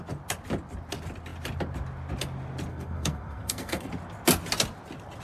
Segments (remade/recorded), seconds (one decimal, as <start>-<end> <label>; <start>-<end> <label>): 0.0-2.7 recorded; 2.7-3.9 remade; 3.9-5.2 recorded